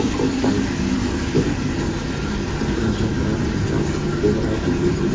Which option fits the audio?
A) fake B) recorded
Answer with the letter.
B